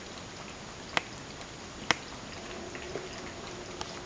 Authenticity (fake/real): real